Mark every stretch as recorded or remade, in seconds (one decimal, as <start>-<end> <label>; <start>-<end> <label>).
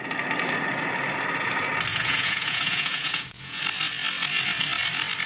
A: 0.0-1.9 recorded; 1.9-3.6 remade; 3.6-5.3 recorded